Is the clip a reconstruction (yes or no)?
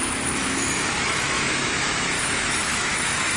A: yes